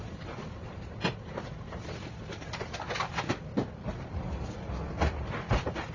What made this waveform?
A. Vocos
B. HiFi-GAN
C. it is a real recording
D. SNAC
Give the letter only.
C